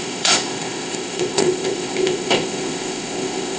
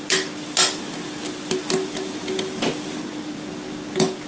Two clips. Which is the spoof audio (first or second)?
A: first